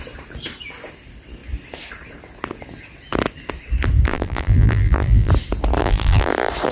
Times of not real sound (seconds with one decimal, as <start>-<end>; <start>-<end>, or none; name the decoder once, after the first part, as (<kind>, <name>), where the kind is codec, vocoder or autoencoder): 4.1-5.3 (vocoder, BigVGAN v2); 5.8-6.3